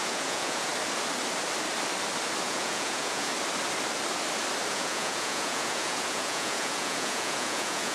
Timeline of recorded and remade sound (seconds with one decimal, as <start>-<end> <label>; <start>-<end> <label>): 0.0-0.7 remade; 0.7-2.4 recorded; 2.4-3.3 remade; 3.3-4.7 recorded; 4.7-7.9 remade